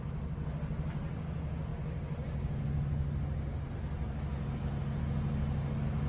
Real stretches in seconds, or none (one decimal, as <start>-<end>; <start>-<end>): 0.0-6.1